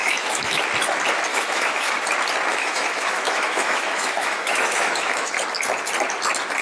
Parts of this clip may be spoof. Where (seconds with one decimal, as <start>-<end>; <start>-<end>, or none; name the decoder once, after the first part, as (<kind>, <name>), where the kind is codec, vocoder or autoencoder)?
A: 0.0-0.6 (autoencoder, DAC-VAE); 1.3-2.0; 2.5-5.3